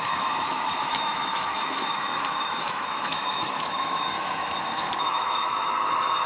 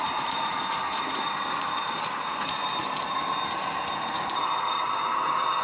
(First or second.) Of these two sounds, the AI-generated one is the first